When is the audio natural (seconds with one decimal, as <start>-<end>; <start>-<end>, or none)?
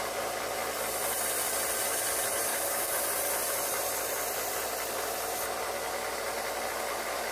0.0-2.5; 3.0-7.3